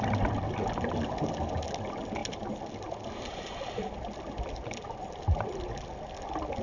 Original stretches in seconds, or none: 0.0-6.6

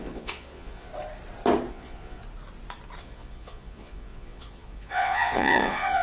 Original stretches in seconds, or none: 0.9-1.7; 2.2-3.0

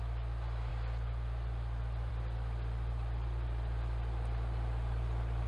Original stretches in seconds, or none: 0.0-5.5

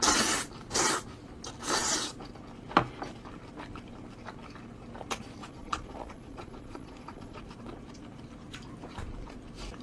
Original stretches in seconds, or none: 0.0-5.4; 7.4-9.8

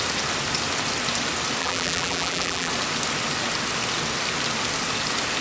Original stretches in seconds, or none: 0.0-1.6; 2.7-5.4

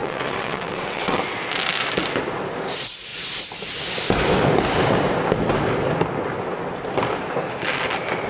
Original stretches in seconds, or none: 1.2-8.3